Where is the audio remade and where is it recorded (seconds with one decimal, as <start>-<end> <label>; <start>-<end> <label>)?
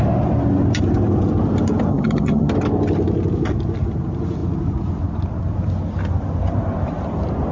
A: 0.0-1.9 recorded; 1.9-2.5 remade; 2.5-7.5 recorded